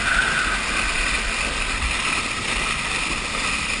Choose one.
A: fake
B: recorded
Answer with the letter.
B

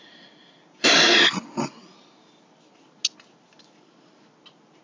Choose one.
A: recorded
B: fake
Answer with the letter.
A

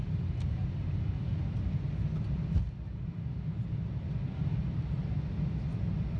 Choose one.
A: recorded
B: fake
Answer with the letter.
A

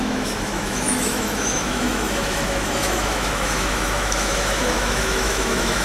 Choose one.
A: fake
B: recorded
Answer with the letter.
A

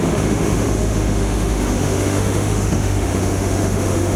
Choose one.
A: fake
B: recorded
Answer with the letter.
A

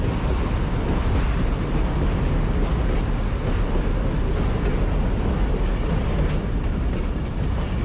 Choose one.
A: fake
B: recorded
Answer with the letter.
B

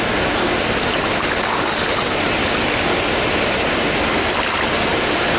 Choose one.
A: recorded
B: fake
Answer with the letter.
A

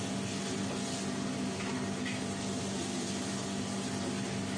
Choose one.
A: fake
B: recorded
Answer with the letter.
B